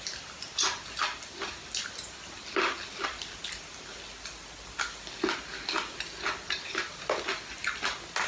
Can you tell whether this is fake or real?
real